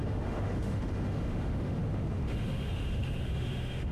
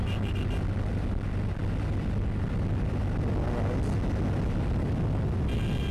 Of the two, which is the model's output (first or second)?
first